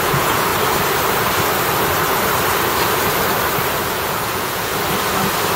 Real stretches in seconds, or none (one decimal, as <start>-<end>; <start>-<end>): 0.5-3.9; 4.7-5.6